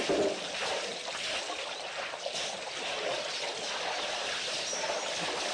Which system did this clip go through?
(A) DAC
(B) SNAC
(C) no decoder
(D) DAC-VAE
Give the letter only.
C